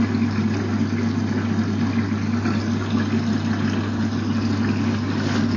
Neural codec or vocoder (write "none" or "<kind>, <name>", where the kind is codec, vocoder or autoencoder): none